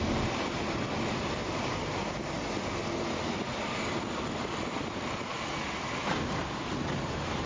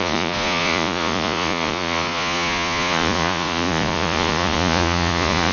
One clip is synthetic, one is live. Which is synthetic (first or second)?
second